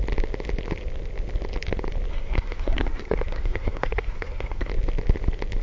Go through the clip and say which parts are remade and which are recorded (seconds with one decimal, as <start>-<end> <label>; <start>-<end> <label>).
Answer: 0.0-2.1 recorded; 2.1-4.7 remade; 4.7-5.6 recorded